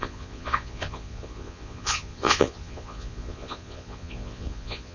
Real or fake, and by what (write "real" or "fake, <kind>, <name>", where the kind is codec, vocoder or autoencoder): fake, vocoder, Vocos